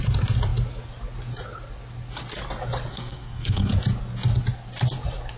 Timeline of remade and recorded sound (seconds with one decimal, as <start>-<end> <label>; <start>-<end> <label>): 0.0-2.9 recorded; 2.9-3.7 remade; 3.7-5.4 recorded